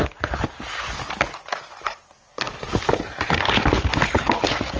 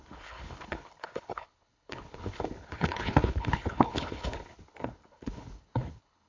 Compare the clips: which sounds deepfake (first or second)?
second